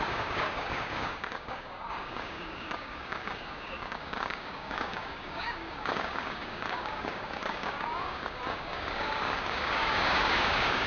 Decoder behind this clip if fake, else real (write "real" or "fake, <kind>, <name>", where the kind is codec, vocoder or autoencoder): fake, codec, DAC